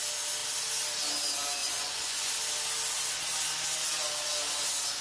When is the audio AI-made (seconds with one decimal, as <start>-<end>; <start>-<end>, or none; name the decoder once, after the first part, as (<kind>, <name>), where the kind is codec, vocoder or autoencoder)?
1.6-2.3 (vocoder, Vocos)